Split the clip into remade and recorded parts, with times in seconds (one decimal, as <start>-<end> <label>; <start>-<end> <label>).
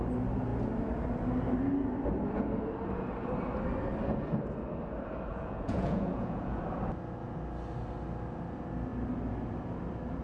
0.0-5.3 recorded; 5.3-6.6 remade; 6.6-10.2 recorded